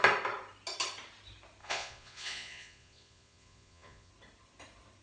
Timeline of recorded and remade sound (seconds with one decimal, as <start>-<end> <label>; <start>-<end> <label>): 0.0-1.6 recorded; 1.6-4.1 remade; 4.1-5.0 recorded